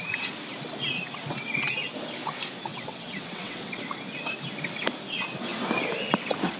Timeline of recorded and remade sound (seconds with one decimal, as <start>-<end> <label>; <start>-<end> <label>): 0.0-2.7 recorded; 2.7-3.8 remade; 3.8-6.6 recorded